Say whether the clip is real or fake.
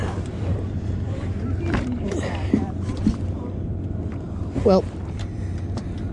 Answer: fake